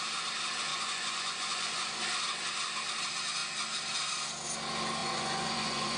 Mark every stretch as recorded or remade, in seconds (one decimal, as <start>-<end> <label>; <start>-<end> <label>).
0.0-0.7 recorded; 0.7-2.0 remade; 2.0-5.0 recorded; 5.0-6.0 remade